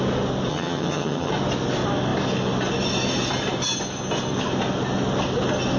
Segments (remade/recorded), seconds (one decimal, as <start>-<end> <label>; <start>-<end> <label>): 0.0-0.5 recorded; 0.5-1.3 remade; 1.3-5.8 recorded